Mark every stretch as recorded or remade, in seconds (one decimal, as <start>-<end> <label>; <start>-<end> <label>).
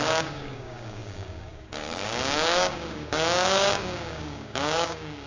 0.0-5.3 remade